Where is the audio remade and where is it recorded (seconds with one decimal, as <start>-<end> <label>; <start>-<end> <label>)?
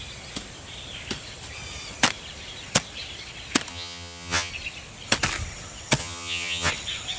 0.0-3.7 recorded; 3.7-4.5 remade; 4.5-6.0 recorded; 6.0-6.7 remade; 6.7-7.2 recorded